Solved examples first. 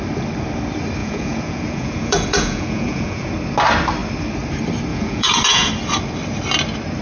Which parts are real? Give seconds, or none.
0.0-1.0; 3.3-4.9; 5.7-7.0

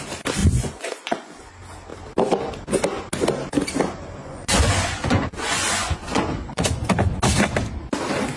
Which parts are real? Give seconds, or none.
0.0-0.4; 1.5-4.2; 6.9-8.4

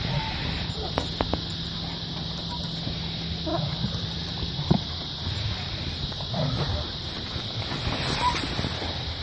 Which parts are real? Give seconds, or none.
0.0-3.5; 7.6-9.2

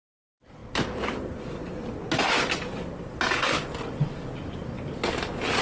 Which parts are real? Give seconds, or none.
0.0-5.6

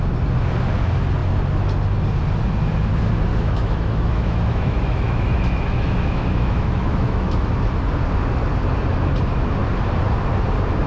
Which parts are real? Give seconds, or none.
0.0-3.3; 7.5-10.9

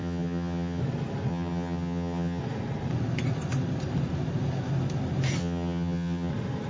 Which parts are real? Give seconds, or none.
0.8-1.3; 2.4-5.4; 6.3-6.7